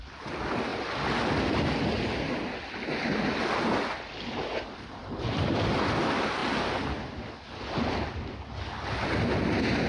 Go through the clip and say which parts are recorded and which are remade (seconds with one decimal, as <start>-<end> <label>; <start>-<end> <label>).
0.0-9.9 recorded